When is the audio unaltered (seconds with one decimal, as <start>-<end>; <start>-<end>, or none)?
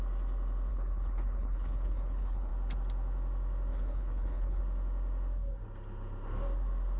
0.0-0.7; 2.5-3.7; 4.6-7.0